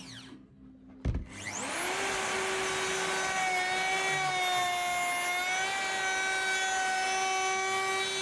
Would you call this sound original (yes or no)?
yes